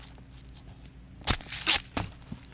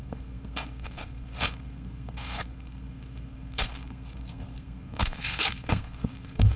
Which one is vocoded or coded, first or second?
second